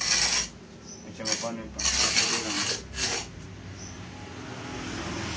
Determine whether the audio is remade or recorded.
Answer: recorded